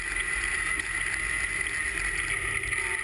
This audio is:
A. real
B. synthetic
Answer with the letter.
A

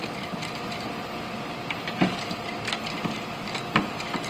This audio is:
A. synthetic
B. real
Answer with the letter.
A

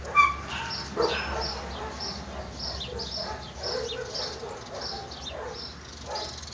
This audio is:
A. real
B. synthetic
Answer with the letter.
A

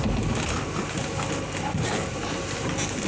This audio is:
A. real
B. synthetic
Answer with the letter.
A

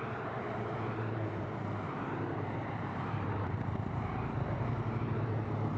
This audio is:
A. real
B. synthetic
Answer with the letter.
B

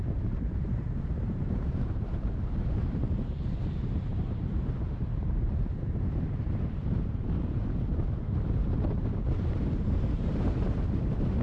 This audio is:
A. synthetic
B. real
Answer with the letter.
A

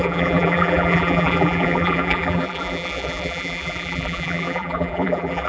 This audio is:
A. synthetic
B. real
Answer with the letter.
A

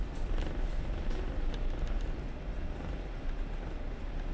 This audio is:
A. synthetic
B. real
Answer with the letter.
B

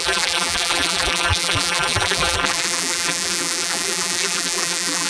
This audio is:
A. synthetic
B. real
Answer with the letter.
A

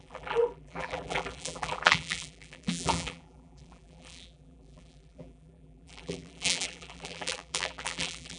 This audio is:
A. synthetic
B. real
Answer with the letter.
A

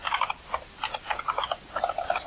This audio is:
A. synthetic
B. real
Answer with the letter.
B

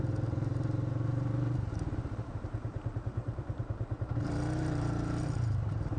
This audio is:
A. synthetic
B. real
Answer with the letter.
A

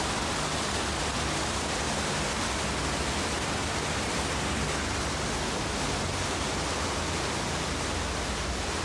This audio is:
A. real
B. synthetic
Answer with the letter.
A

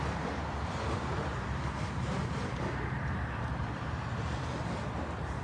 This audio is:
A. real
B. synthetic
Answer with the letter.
B